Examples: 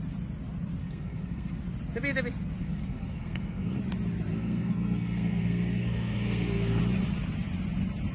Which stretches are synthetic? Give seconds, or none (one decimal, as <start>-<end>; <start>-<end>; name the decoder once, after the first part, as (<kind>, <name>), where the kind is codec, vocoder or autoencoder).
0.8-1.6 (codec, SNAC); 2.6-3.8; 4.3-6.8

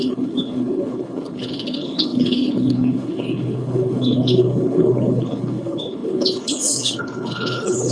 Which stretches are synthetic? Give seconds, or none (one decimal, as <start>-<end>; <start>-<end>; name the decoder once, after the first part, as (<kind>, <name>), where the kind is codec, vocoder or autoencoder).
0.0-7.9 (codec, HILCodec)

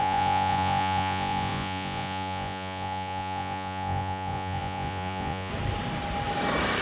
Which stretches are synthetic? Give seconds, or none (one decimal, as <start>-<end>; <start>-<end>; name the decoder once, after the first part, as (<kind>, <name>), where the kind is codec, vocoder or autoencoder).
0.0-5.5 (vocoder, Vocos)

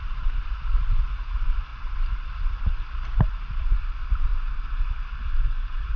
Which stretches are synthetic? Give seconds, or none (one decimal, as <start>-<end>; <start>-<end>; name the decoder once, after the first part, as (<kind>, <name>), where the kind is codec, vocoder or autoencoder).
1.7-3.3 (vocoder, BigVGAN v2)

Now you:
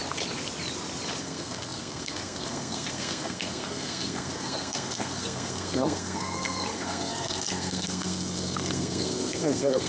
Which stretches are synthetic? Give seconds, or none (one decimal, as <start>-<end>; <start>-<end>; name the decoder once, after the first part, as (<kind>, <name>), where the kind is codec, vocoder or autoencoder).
1.2-9.9 (codec, SNAC)

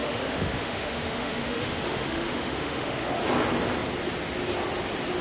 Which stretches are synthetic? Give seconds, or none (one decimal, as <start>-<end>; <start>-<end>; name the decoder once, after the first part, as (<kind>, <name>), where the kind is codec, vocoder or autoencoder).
0.0-3.1 (autoencoder, DAC-VAE)

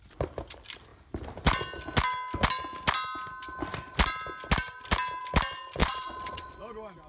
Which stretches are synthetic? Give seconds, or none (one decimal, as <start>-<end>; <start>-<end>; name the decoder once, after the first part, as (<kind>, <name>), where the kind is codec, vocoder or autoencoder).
5.8-6.5 (vocoder, Vocos)